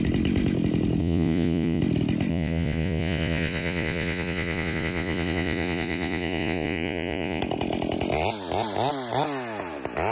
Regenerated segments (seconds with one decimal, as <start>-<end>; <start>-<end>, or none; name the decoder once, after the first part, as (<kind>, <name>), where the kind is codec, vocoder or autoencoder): 1.0-1.8 (vocoder, Vocos); 2.3-7.4